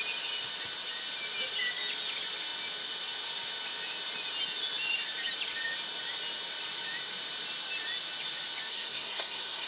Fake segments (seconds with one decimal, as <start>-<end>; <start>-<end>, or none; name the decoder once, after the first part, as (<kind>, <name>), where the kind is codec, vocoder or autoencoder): 8.7-9.7 (codec, SNAC)